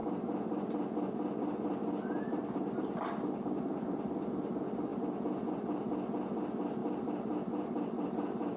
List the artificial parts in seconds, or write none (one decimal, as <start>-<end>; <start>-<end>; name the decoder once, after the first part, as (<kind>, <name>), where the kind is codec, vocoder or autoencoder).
0.0-4.9 (vocoder, BigVGAN v2); 5.5-8.6